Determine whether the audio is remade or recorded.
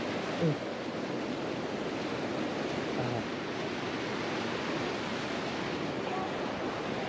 recorded